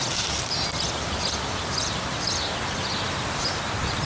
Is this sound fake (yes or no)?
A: no